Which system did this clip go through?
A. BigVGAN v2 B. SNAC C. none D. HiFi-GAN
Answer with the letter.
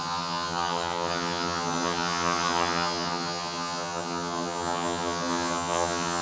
D